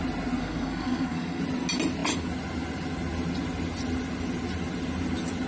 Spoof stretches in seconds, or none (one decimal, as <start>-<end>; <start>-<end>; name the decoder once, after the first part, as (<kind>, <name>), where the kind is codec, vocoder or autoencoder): 0.4-1.4 (codec, SNAC)